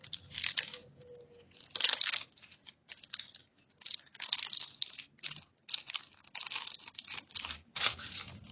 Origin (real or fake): real